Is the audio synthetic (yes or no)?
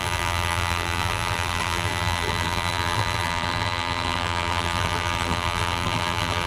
yes